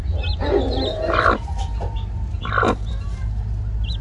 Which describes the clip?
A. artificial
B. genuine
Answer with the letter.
B